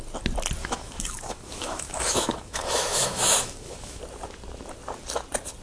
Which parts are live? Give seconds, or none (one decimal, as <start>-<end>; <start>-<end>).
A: 0.0-0.6; 4.0-5.6

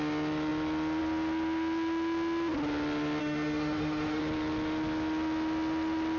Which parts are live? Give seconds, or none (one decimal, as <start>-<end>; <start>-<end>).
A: 0.0-3.2; 4.2-6.2